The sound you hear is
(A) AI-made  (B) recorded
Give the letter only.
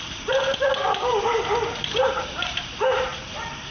A